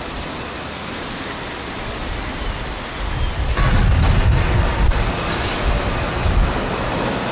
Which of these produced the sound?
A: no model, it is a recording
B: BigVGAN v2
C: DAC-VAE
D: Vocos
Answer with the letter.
A